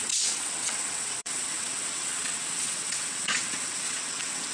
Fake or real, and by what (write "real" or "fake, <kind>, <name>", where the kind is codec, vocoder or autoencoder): fake, vocoder, WaveNeXt